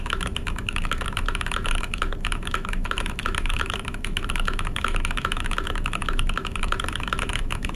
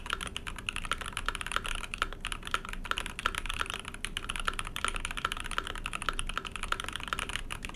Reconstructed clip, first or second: first